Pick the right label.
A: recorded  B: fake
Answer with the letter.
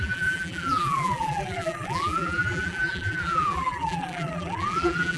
B